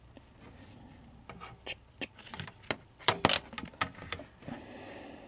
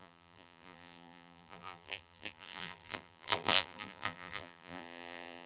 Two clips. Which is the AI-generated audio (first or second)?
second